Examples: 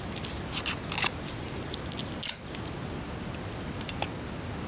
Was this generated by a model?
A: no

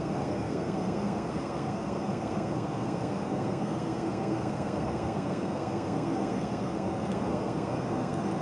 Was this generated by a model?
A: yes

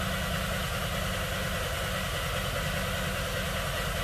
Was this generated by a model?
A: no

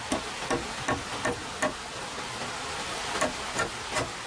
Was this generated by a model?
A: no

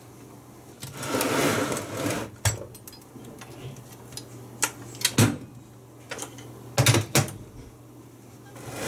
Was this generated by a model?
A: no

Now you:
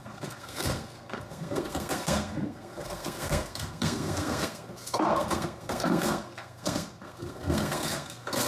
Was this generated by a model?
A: yes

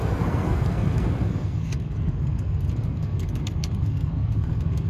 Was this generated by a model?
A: yes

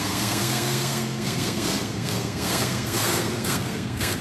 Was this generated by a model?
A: yes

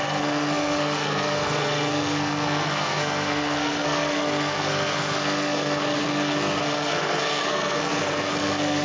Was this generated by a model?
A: yes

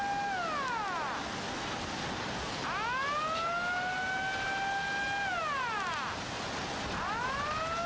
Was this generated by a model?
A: no